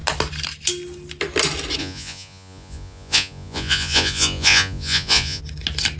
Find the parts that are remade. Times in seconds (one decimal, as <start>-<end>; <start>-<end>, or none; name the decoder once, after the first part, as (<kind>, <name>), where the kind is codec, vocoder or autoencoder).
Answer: 1.8-5.4 (vocoder, Vocos)

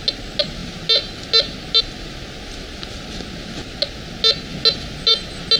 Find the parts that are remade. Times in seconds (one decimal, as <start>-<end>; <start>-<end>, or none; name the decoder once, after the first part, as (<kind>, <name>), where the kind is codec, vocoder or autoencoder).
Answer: none

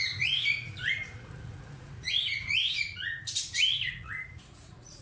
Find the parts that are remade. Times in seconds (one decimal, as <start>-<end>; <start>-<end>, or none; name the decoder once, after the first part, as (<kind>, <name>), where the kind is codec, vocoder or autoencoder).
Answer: 0.0-3.2 (vocoder, Vocos); 3.9-5.0

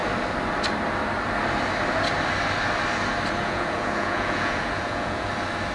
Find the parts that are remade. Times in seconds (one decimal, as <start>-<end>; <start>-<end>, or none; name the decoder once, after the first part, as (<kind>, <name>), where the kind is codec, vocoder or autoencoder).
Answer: 3.4-5.3 (vocoder, Vocos)

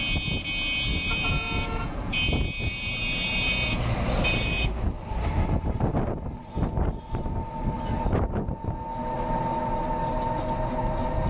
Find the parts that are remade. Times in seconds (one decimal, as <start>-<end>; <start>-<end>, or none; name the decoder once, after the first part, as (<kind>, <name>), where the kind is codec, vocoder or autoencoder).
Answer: 0.9-3.8 (vocoder, Vocos)

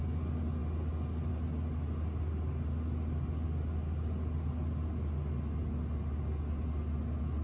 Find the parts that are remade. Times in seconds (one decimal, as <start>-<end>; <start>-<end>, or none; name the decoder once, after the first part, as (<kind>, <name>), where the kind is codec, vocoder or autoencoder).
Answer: none